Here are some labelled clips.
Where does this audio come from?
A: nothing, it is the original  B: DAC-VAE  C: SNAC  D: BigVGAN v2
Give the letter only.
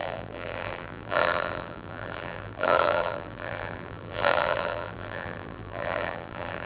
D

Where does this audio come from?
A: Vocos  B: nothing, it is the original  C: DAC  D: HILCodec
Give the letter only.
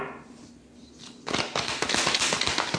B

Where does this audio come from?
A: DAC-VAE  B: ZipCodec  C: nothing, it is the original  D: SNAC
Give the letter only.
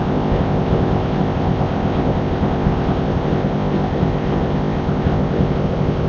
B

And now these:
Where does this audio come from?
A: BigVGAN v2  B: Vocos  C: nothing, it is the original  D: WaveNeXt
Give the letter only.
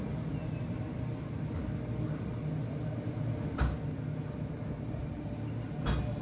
C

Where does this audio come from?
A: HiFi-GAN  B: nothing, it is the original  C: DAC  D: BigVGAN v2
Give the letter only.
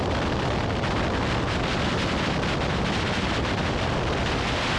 B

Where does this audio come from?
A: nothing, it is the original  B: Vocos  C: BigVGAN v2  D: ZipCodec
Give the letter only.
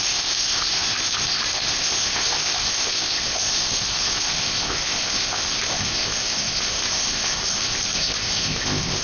D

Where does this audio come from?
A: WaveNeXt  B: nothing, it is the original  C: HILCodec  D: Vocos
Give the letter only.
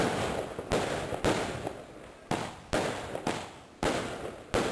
B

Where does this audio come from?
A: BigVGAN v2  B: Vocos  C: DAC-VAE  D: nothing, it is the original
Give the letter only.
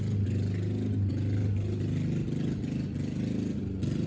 D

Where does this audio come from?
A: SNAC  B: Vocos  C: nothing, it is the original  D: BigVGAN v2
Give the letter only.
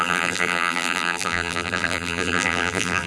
D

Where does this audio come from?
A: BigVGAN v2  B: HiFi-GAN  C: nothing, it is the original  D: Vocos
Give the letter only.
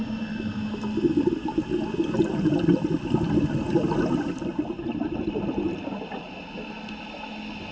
C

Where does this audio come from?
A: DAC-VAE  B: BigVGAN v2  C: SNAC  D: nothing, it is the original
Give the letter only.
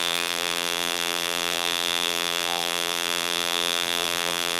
B